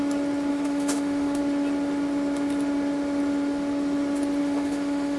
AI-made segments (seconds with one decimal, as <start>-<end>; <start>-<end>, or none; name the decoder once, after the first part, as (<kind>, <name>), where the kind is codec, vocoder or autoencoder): 0.5-1.4 (autoencoder, DAC-VAE); 4.4-5.2